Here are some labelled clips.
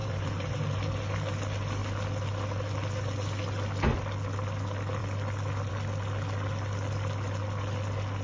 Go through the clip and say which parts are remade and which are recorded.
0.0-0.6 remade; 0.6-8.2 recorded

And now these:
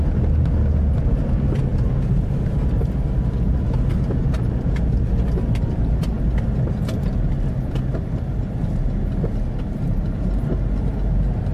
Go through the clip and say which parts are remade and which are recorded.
0.0-11.5 recorded

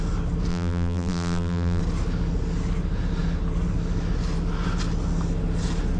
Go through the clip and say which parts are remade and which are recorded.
0.0-0.5 recorded; 0.5-1.8 remade; 1.8-6.0 recorded

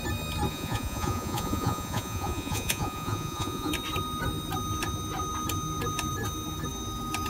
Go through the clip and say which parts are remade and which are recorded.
0.0-0.5 recorded; 0.5-3.7 remade; 3.7-7.3 recorded

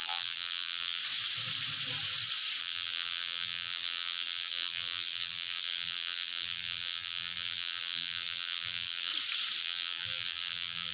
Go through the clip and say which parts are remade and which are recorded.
0.0-1.0 remade; 1.0-2.6 recorded; 2.6-9.1 remade; 9.1-9.6 recorded; 9.6-10.9 remade